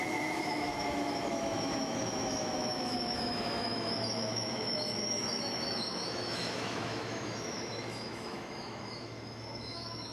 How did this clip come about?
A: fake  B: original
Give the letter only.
A